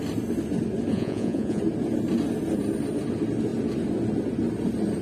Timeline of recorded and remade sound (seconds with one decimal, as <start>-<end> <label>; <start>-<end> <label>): 0.0-0.9 recorded; 0.9-1.6 remade; 1.6-5.0 recorded